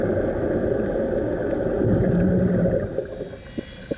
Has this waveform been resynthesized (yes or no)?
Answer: no